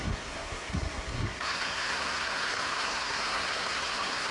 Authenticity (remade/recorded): remade